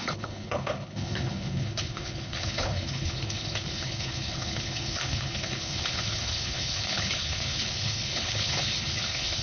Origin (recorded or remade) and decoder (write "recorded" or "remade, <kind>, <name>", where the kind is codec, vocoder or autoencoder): remade, codec, HILCodec